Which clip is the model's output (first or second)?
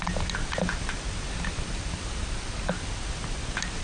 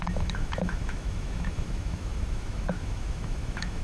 second